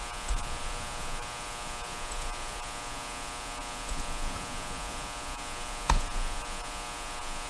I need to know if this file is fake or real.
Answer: fake